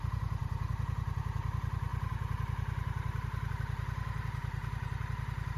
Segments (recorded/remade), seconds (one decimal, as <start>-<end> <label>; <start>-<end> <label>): 0.0-5.6 recorded